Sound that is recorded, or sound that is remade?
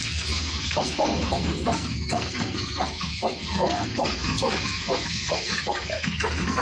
remade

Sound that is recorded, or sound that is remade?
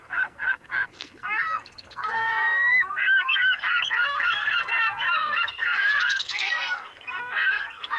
remade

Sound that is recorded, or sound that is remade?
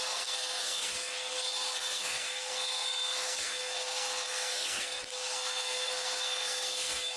remade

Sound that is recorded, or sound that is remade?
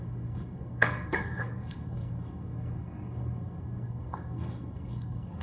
remade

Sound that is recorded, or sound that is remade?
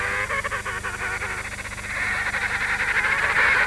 recorded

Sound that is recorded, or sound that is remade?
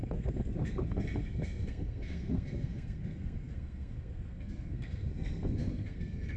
remade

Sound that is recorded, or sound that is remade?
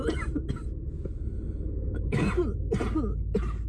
recorded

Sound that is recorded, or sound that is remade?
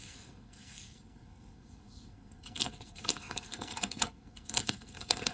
remade